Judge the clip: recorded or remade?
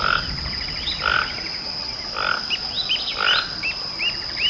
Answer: recorded